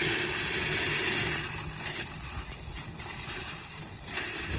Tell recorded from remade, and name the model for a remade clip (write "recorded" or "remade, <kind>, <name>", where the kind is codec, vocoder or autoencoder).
recorded